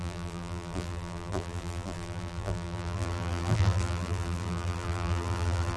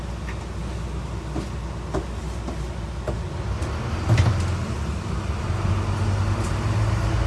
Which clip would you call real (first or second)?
second